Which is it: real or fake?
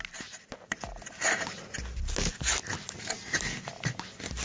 real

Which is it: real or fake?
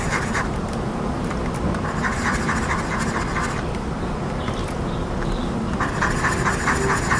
real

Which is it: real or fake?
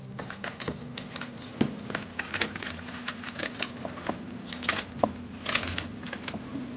real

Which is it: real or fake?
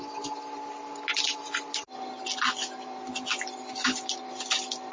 real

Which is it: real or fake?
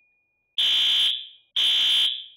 real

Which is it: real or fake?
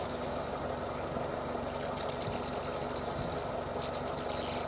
real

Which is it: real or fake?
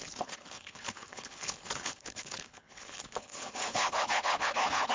fake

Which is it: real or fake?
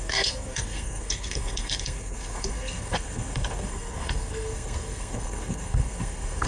fake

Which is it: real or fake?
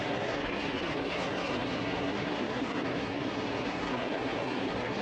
fake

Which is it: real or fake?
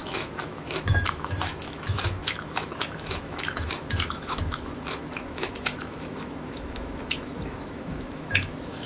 fake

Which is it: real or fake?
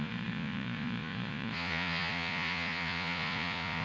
fake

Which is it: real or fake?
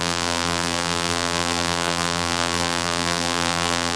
fake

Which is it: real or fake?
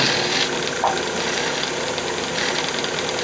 real